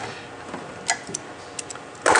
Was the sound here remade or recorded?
recorded